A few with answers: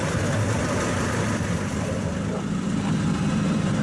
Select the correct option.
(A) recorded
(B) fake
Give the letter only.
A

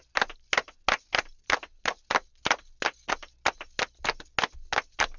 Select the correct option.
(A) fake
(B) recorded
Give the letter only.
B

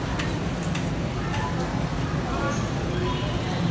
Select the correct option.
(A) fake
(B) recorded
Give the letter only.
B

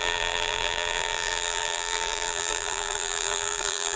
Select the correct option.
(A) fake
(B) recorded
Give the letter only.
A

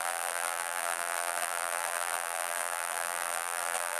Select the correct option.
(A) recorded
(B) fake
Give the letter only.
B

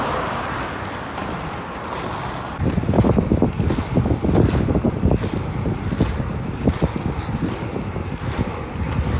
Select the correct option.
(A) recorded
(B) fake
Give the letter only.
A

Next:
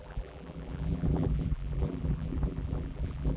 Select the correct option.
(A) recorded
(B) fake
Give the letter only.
B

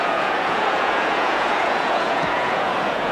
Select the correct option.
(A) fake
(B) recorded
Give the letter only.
A